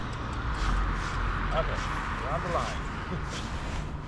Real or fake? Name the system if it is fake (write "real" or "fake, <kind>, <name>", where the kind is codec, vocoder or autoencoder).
real